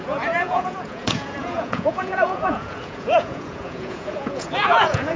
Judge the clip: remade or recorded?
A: remade